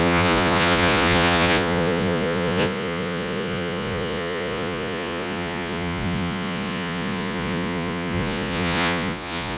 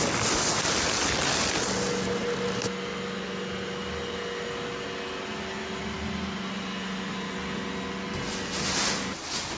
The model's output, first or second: first